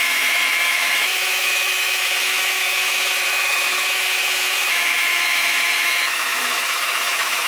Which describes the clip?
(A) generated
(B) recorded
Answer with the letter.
A